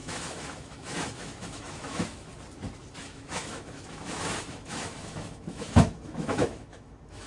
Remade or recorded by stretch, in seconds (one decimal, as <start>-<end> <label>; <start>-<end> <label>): 0.0-2.3 remade; 2.3-3.0 recorded; 3.0-7.3 remade